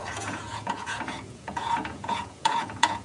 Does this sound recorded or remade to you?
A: remade